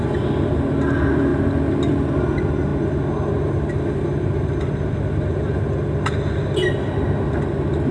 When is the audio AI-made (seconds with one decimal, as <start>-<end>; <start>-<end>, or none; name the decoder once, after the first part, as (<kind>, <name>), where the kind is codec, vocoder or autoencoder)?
none

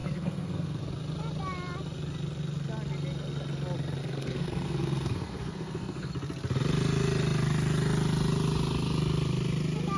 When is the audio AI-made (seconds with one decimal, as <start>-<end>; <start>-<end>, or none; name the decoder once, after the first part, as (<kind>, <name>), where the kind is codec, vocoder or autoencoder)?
0.0-0.8 (codec, SNAC); 4.0-6.1